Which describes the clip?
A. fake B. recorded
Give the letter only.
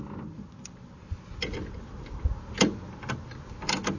B